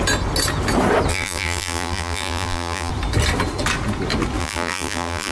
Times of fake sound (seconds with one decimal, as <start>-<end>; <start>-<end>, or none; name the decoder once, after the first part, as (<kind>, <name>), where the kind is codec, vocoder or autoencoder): 1.1-2.9 (vocoder, BigVGAN v2); 4.4-5.3